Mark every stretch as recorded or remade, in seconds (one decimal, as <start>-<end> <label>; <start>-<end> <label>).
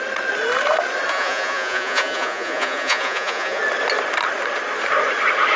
0.0-1.1 recorded; 1.1-3.6 remade; 3.6-5.6 recorded